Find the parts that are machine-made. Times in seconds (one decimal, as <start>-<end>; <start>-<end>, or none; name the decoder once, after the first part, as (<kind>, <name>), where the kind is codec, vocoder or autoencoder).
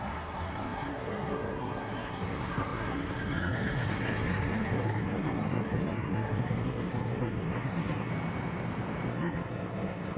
0.0-8.1 (codec, SNAC); 9.1-10.2